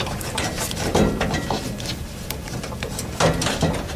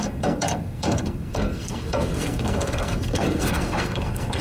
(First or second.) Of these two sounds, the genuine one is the first